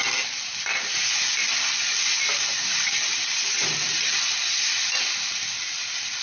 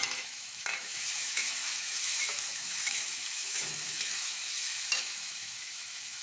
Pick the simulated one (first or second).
second